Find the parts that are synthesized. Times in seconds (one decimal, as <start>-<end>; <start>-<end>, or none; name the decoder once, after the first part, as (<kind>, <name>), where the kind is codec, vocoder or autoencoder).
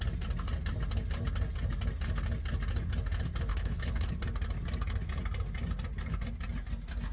3.5-4.1 (codec, HILCodec)